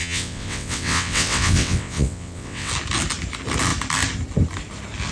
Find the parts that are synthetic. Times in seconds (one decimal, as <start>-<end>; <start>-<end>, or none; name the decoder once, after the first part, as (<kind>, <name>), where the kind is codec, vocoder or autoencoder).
0.0-2.7 (vocoder, WaveNeXt)